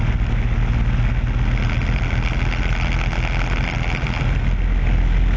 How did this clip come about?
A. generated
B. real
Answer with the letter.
B